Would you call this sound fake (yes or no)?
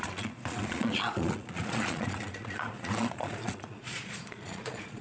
yes